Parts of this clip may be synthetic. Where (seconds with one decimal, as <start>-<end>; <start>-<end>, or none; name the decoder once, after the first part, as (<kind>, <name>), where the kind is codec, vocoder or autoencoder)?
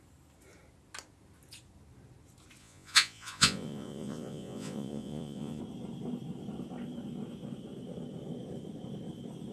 2.6-5.6 (vocoder, Vocos)